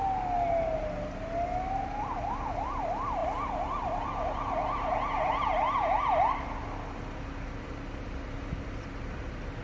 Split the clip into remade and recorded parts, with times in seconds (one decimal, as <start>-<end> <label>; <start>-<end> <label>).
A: 0.0-9.6 recorded